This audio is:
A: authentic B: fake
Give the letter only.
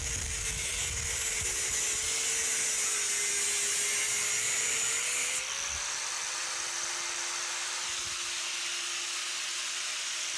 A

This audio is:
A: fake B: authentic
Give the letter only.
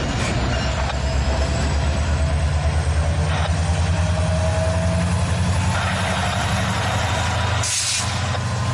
B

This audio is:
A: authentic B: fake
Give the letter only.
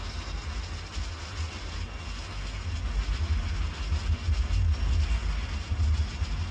A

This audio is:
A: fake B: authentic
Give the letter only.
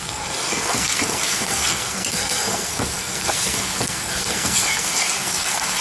A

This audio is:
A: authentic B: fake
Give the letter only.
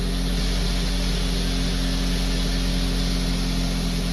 A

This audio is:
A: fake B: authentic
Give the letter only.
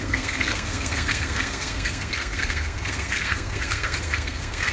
A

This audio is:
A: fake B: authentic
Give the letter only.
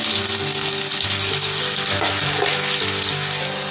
B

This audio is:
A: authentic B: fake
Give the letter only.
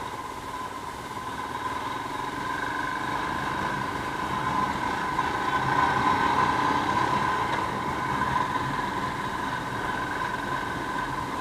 A